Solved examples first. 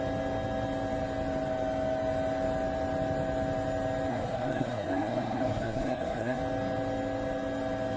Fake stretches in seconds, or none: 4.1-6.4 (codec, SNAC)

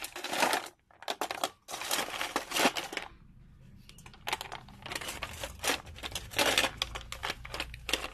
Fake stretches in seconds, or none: none

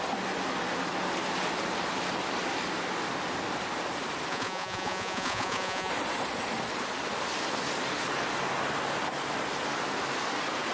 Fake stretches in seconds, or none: 4.3-5.9 (vocoder, Vocos)